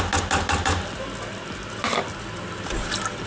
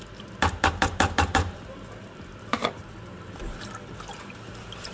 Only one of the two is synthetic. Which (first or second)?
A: second